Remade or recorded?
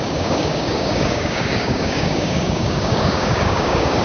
remade